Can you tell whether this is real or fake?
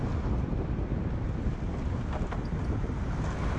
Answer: real